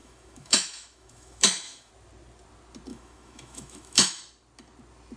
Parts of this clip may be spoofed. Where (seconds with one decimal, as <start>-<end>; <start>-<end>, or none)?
0.0-1.9; 2.9-4.2

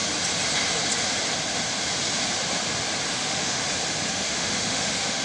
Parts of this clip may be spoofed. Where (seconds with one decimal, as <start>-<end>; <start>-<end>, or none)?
3.1-3.6; 4.1-5.2